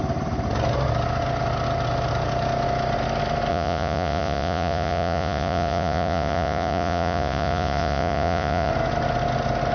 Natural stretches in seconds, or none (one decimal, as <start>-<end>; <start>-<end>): 0.0-3.5; 8.7-9.7